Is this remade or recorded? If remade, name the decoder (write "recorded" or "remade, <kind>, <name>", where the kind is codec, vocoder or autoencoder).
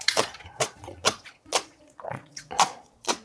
remade, vocoder, Vocos